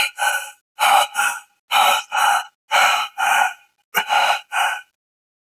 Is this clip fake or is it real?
real